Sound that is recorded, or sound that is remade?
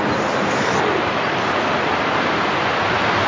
recorded